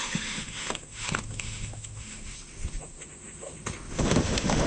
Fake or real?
fake